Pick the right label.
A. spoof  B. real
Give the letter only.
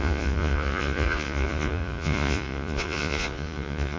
A